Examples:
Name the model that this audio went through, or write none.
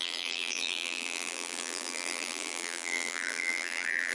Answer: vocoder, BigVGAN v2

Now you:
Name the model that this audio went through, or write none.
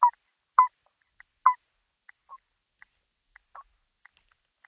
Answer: none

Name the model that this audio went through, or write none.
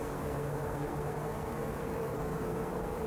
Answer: codec, SNAC